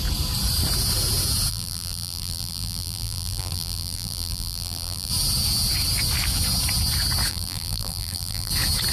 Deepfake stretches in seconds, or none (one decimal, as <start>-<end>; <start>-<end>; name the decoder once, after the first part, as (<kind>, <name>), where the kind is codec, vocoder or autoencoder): 1.5-5.1 (vocoder, BigVGAN v2); 7.3-8.5